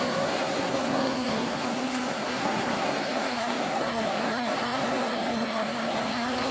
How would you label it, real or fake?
fake